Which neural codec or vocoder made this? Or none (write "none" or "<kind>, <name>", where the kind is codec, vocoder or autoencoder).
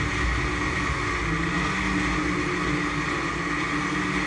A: none